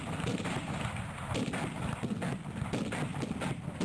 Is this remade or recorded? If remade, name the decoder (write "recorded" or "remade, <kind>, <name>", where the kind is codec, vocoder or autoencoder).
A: recorded